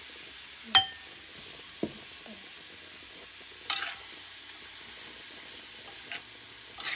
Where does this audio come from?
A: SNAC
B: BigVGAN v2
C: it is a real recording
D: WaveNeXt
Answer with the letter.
C